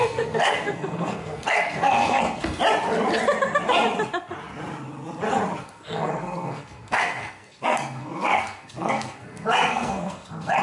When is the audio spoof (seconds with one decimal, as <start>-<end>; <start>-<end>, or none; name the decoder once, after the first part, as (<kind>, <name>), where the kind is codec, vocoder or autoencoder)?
0.0-2.6 (codec, SNAC); 5.6-10.6